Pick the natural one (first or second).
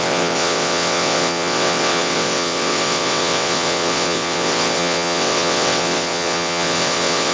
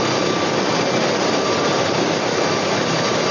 second